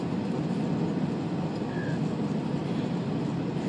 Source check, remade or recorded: recorded